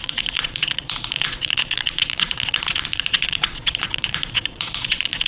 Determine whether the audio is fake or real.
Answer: fake